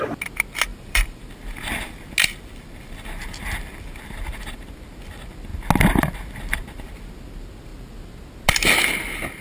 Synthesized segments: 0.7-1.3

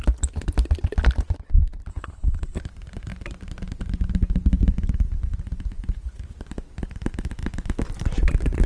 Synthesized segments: 1.9-2.6

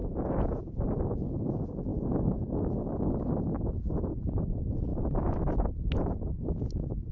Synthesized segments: 0.0-0.8